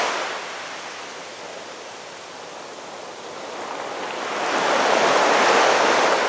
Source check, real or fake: real